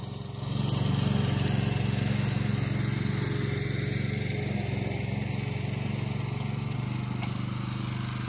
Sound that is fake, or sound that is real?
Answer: real